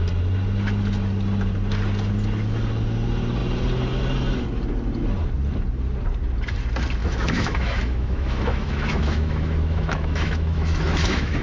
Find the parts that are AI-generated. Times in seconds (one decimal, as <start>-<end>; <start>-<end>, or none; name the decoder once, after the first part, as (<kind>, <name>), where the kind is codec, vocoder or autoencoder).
7.0-11.4 (autoencoder, DAC-VAE)